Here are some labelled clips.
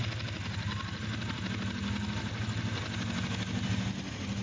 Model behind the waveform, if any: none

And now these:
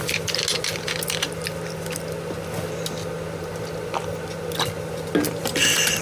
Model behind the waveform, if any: none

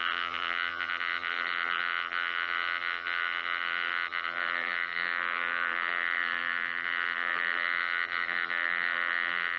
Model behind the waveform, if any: vocoder, BigVGAN v2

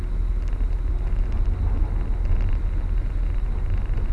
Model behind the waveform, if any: none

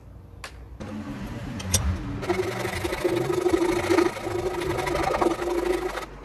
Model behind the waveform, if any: none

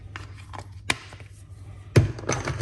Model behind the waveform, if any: none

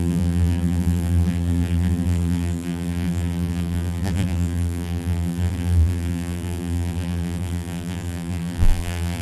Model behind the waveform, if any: vocoder, BigVGAN v2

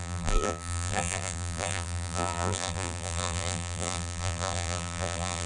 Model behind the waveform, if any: vocoder, BigVGAN v2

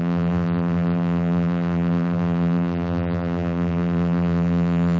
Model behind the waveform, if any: vocoder, BigVGAN v2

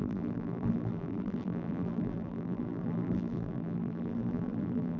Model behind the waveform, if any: vocoder, BigVGAN v2